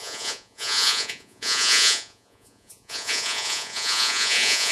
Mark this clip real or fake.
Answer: fake